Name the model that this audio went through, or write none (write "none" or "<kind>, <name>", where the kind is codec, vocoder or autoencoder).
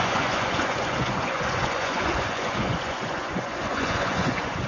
vocoder, Vocos